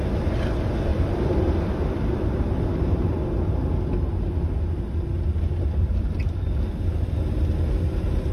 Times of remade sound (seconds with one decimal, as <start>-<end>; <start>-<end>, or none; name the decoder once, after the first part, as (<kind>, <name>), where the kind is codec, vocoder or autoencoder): 0.9-3.2 (vocoder, BigVGAN v2)